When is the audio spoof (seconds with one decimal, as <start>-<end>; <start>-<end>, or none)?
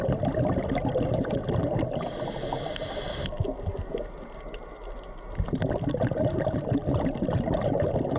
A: none